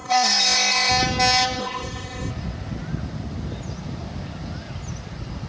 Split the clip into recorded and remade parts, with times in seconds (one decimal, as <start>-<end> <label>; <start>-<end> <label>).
0.0-0.9 remade; 0.9-1.6 recorded; 1.6-2.3 remade; 2.3-5.5 recorded